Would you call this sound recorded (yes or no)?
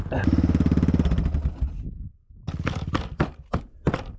yes